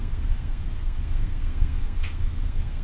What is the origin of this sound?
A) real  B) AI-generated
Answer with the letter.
B